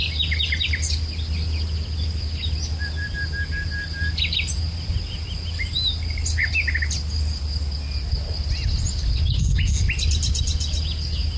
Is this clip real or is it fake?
real